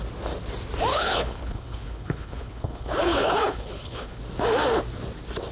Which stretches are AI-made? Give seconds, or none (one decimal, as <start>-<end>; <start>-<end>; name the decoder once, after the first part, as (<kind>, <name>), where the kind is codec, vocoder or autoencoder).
0.9-4.2 (codec, HILCodec)